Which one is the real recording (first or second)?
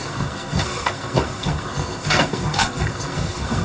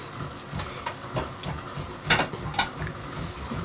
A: second